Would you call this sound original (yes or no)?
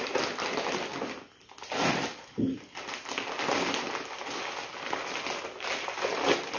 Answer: yes